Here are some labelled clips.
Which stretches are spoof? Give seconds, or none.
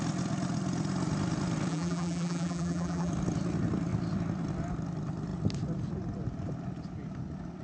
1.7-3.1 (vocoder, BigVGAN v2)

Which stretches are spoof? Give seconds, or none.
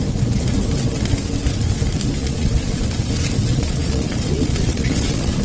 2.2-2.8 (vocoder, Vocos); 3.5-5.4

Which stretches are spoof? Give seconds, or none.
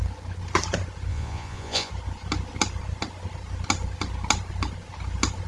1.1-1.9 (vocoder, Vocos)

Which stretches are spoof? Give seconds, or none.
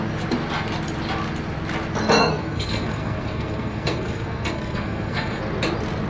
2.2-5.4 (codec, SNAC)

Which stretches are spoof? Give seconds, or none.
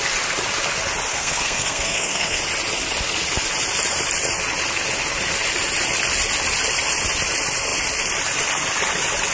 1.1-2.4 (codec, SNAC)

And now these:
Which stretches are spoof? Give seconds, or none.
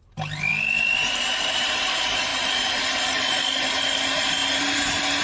none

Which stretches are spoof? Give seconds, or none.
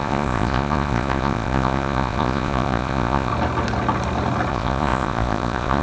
0.0-3.3 (vocoder, Vocos); 4.5-5.8